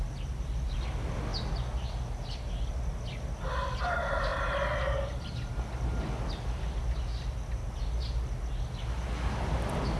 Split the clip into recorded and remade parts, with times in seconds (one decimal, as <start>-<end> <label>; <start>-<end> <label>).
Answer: 0.0-10.0 recorded